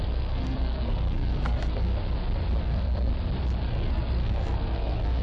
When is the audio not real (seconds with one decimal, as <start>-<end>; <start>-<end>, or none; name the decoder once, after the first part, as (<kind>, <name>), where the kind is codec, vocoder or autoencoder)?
0.0-1.9 (codec, SNAC); 2.6-3.1; 3.6-5.2